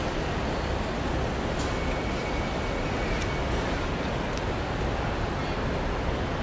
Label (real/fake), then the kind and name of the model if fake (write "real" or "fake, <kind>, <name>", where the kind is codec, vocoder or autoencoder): real